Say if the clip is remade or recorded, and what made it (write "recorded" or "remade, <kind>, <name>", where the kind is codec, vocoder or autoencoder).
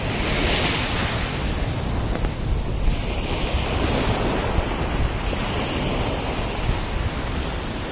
recorded